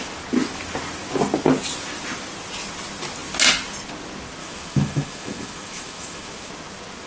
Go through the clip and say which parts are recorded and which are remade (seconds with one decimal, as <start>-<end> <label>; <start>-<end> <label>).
0.0-4.4 recorded; 4.4-6.5 remade; 6.5-7.1 recorded